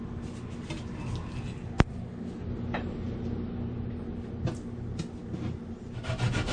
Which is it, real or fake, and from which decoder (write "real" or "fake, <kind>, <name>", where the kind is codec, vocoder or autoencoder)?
real